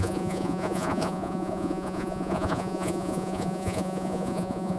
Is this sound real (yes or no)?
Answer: no